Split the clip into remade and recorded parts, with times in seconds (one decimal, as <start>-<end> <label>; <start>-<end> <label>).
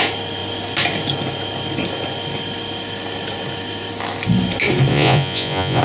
0.0-4.9 recorded; 4.9-5.8 remade